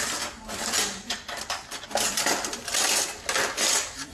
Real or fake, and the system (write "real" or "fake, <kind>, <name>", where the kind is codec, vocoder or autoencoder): real